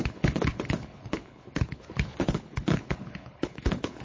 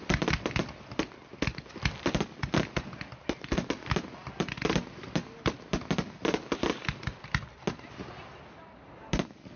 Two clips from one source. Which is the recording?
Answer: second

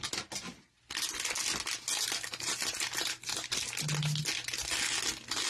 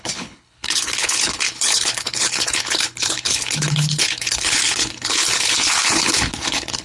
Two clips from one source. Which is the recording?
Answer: first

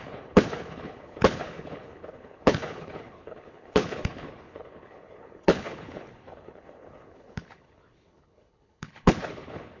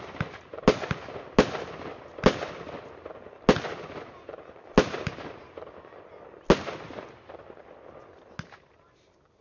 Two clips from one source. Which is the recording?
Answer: second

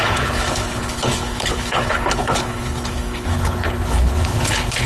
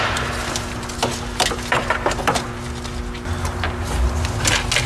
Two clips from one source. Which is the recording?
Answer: second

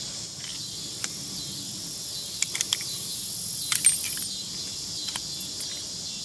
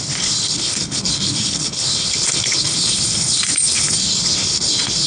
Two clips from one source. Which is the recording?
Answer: first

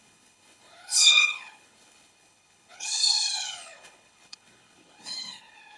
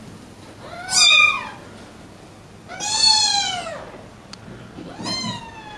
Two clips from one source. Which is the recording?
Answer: second